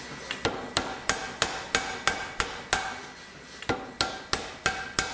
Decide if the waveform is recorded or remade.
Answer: recorded